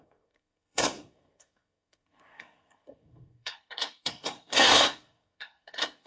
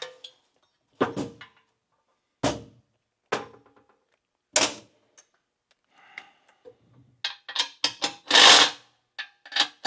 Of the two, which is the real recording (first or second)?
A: second